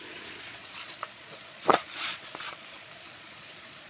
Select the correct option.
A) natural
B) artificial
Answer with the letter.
B